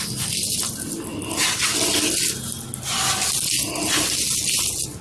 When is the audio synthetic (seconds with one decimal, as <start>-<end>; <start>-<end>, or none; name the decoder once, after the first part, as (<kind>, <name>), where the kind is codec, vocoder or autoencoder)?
none